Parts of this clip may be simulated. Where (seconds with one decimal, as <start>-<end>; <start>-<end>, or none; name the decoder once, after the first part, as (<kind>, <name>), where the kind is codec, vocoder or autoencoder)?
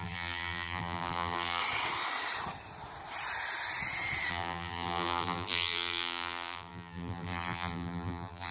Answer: 0.0-1.6 (vocoder, BigVGAN v2); 4.3-8.5